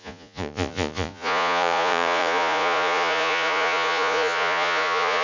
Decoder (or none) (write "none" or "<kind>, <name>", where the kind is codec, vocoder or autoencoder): vocoder, Vocos